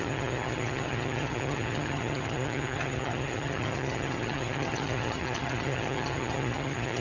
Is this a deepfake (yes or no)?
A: yes